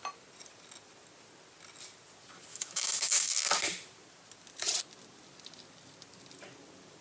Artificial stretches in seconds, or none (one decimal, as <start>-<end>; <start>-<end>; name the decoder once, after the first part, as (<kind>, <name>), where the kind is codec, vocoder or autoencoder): 2.5-3.4 (autoencoder, DAC-VAE)